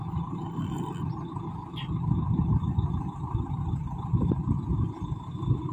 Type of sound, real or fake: real